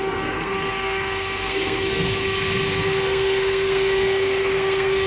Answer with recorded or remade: remade